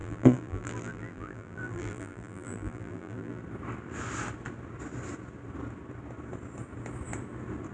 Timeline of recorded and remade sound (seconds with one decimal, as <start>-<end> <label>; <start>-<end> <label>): 0.0-3.4 remade; 3.4-7.7 recorded